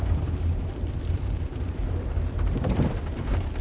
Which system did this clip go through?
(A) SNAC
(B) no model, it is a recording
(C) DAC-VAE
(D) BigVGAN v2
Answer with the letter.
D